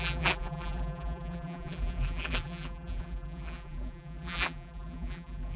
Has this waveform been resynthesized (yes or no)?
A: yes